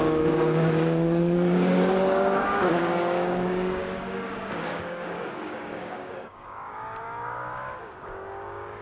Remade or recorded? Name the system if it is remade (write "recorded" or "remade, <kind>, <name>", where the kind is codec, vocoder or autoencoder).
remade, codec, DAC